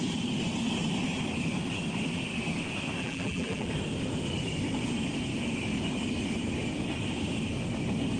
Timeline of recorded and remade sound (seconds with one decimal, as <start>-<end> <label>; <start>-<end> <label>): 0.0-3.0 recorded; 3.0-3.7 remade; 3.7-8.2 recorded